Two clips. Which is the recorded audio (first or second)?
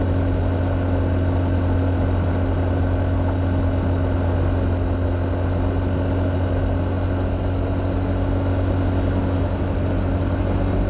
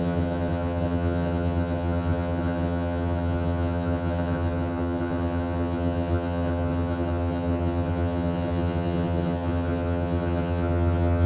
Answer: first